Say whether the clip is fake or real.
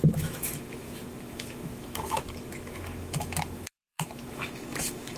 fake